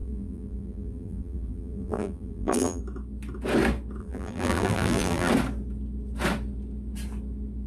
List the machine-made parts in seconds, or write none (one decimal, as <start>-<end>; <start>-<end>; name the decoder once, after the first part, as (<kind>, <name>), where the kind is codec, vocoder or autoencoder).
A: 0.0-2.8 (vocoder, BigVGAN v2); 4.0-5.3